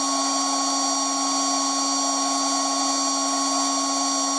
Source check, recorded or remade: recorded